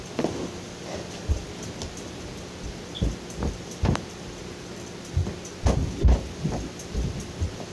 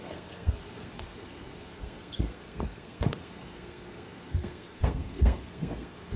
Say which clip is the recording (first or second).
first